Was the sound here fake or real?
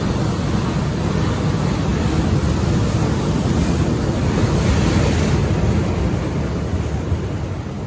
real